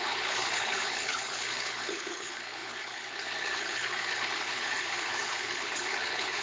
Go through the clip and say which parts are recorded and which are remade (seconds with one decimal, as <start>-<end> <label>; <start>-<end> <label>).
0.0-6.4 remade